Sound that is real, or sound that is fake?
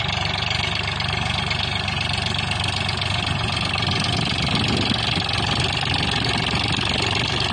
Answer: real